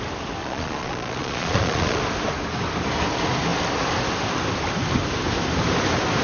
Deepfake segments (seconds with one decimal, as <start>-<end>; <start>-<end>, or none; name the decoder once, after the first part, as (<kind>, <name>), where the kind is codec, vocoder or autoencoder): 0.4-2.0 (vocoder, Vocos)